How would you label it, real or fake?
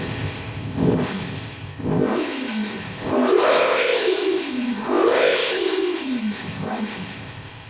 fake